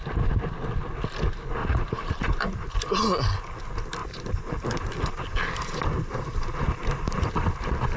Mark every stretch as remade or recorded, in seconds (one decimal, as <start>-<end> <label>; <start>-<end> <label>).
0.0-1.6 recorded; 1.6-2.6 remade; 2.6-4.0 recorded; 4.0-7.5 remade; 7.5-8.0 recorded